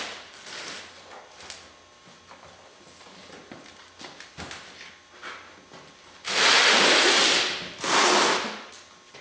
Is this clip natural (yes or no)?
yes